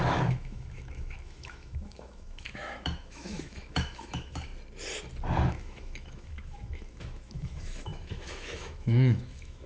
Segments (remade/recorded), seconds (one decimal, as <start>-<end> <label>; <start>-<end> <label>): 0.0-4.5 remade; 4.5-5.5 recorded; 5.5-9.7 remade